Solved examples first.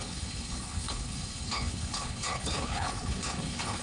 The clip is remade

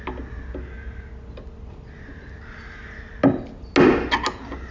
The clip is recorded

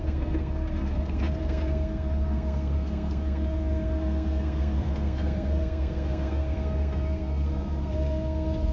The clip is remade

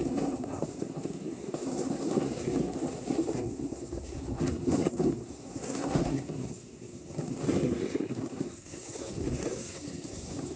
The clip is remade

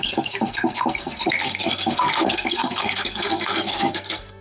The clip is remade